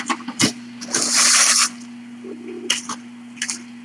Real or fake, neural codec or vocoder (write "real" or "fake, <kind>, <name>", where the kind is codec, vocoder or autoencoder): real